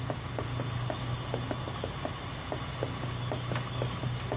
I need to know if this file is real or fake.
real